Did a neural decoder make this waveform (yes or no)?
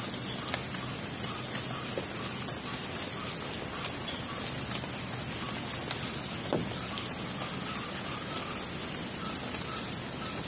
no